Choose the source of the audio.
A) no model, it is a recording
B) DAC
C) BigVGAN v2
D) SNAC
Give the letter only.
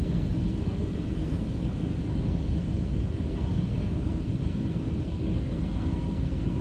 D